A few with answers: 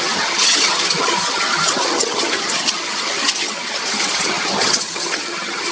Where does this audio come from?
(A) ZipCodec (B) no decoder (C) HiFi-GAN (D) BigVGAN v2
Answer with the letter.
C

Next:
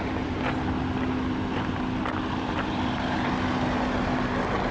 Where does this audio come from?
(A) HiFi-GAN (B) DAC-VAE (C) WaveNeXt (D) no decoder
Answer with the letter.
D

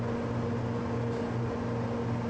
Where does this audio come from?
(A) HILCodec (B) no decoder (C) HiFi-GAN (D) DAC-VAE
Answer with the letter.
B